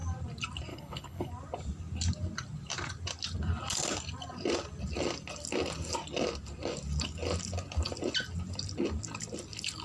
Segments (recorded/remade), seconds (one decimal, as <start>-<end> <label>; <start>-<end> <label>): 0.0-0.7 recorded; 0.7-1.3 remade; 1.3-9.8 recorded